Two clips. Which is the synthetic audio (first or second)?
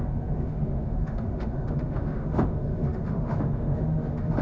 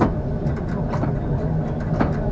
first